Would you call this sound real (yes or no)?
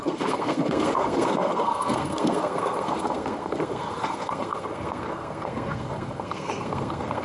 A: no